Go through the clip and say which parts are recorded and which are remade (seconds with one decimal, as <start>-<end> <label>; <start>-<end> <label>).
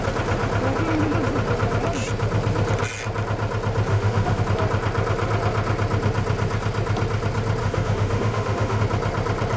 0.0-3.9 recorded; 3.9-4.4 remade; 4.4-7.6 recorded; 7.6-8.8 remade; 8.8-9.6 recorded